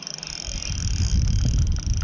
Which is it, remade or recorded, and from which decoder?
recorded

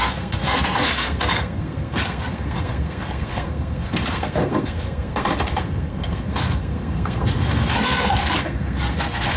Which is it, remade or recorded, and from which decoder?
remade, codec, SNAC